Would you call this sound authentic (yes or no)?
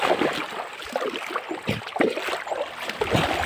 yes